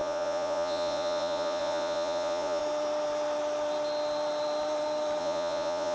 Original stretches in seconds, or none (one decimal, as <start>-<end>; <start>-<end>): 2.6-5.2